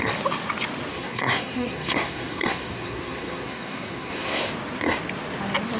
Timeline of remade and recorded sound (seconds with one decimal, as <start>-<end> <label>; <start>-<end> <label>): 0.0-0.9 recorded; 0.9-4.4 remade; 4.4-5.8 recorded